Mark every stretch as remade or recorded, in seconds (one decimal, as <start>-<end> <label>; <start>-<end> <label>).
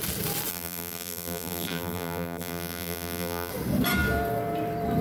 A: 0.0-0.5 recorded; 0.5-3.5 remade; 3.5-5.0 recorded